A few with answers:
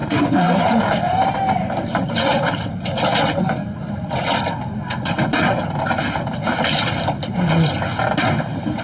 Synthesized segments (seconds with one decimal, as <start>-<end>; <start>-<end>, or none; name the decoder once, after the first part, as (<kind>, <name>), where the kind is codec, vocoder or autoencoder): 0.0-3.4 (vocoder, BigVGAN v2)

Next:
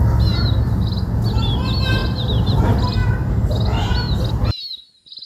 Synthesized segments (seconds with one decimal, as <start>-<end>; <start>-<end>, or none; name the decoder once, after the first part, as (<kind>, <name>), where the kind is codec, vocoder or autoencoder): 2.0-2.6 (vocoder, BigVGAN v2); 3.0-3.9

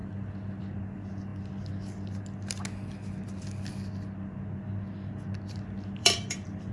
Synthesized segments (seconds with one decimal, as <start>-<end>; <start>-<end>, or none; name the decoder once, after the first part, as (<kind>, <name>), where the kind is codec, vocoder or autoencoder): 6.0-6.7 (vocoder, BigVGAN v2)